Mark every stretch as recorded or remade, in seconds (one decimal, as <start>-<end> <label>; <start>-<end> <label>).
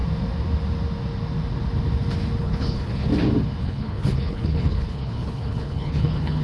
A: 0.0-2.4 recorded; 2.4-3.1 remade; 3.1-3.6 recorded; 3.6-6.4 remade